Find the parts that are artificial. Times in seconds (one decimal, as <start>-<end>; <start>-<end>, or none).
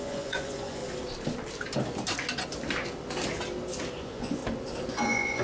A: 0.0-0.8; 4.0-4.4; 4.9-5.4